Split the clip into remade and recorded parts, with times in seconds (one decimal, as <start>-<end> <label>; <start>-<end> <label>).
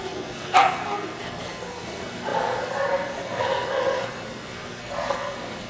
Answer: 0.0-5.7 remade